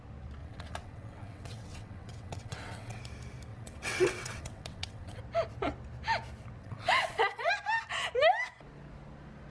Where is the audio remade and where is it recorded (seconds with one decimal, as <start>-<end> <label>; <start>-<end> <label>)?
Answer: 0.0-0.4 recorded; 0.4-3.0 remade; 3.0-3.5 recorded; 3.5-5.2 remade; 5.2-6.6 recorded; 6.6-7.5 remade; 7.5-9.5 recorded